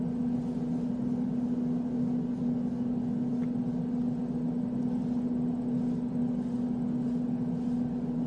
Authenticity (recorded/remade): recorded